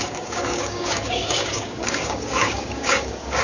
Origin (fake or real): fake